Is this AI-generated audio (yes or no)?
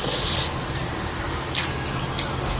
no